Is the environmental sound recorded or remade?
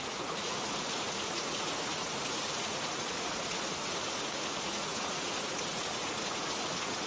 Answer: remade